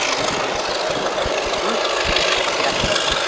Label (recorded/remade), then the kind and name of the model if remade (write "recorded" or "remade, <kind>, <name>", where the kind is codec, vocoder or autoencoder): recorded